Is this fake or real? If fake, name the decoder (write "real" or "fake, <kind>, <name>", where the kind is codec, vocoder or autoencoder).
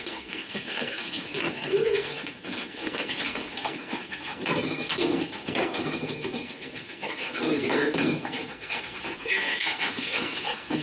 fake, codec, SNAC